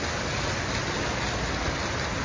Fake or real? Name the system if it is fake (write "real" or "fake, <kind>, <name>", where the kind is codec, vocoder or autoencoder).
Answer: real